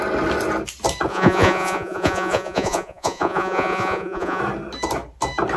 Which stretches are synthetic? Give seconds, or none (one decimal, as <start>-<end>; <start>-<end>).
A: 1.1-4.4